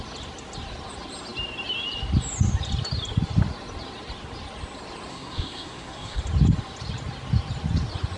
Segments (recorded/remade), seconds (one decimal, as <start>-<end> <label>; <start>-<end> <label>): 0.0-5.1 recorded; 5.1-6.2 remade; 6.2-8.2 recorded